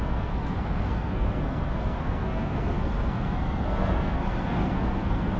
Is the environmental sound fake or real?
fake